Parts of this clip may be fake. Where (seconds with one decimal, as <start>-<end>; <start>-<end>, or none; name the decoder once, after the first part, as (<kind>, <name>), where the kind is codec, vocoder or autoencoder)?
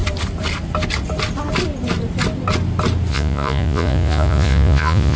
3.1-5.2 (vocoder, Vocos)